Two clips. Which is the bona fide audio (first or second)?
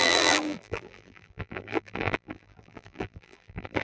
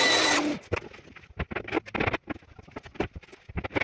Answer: second